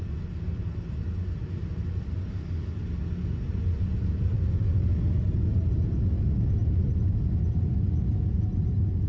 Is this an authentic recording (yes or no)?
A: yes